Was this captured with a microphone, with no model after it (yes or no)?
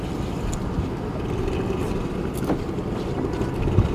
yes